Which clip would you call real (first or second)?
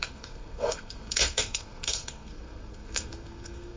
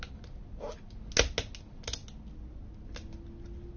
second